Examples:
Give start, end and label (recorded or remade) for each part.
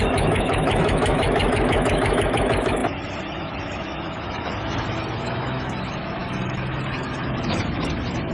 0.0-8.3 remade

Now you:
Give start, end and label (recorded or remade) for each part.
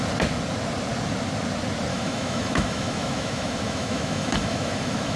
0.0-1.9 recorded; 1.9-5.2 remade